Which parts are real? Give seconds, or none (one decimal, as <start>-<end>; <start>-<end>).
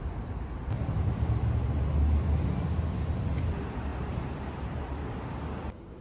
0.0-3.9; 4.8-6.0